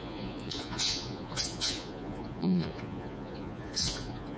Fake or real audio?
fake